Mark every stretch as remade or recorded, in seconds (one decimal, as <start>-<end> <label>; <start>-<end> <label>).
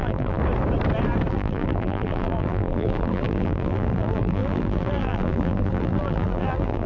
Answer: 0.0-0.4 remade; 0.4-1.3 recorded; 1.3-6.9 remade